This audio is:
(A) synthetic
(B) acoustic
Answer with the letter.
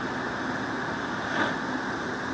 B